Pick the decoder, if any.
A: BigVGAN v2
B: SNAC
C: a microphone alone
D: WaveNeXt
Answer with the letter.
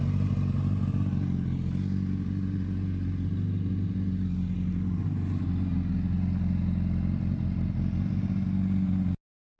C